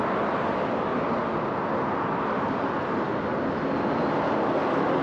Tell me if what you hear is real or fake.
real